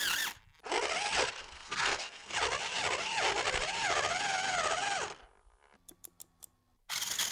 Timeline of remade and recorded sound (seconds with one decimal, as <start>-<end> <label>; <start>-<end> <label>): 0.0-1.4 recorded; 1.4-2.3 remade; 2.3-7.3 recorded